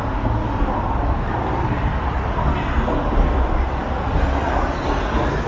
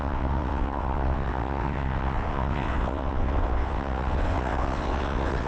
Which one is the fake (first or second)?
second